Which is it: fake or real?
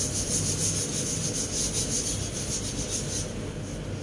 real